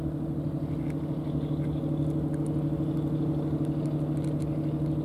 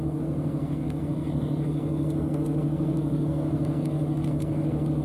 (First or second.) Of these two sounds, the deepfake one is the second